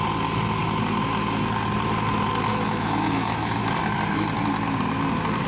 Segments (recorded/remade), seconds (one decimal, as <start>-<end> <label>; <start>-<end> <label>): 0.0-2.5 recorded; 2.5-3.6 remade; 3.6-5.5 recorded